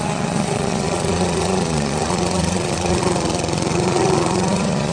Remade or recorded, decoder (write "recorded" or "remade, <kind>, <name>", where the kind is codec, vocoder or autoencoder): remade, vocoder, Vocos